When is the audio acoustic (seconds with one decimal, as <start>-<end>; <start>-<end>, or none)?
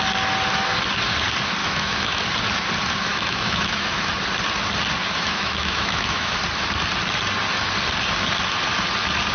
0.0-1.6; 2.2-3.1; 4.1-5.1; 6.3-9.3